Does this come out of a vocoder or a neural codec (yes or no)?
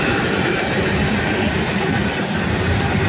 yes